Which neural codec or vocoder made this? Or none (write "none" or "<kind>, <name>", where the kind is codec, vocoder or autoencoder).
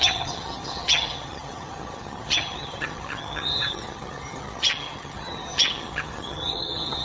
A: vocoder, HiFi-GAN